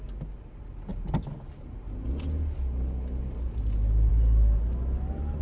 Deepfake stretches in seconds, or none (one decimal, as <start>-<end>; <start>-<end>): none